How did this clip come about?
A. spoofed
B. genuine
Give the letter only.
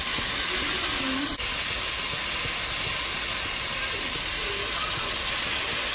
B